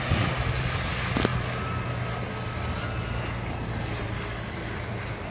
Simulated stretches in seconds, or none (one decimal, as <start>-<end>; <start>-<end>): none